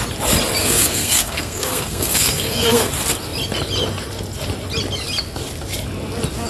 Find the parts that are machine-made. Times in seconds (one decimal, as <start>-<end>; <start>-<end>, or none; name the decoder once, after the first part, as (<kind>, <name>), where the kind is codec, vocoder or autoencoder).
0.6-2.9 (codec, SNAC)

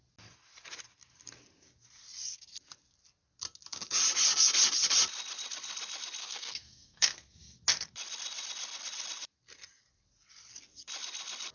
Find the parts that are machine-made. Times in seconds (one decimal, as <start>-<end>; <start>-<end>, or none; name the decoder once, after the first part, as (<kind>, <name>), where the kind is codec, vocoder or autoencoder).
6.2-7.3 (codec, SNAC)

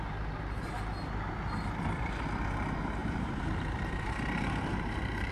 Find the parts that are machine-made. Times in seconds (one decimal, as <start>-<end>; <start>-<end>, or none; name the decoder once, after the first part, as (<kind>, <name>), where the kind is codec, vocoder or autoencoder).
3.0-5.3 (vocoder, BigVGAN v2)

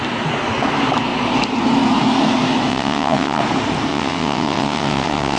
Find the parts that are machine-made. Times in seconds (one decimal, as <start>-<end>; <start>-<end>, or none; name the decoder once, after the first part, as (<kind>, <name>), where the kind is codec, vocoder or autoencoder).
2.7-3.4 (vocoder, WaveNeXt); 3.9-5.4

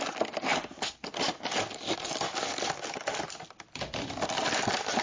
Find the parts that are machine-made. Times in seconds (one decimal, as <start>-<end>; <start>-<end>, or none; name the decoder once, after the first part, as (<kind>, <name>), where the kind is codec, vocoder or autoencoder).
0.0-5.0 (vocoder, BigVGAN v2)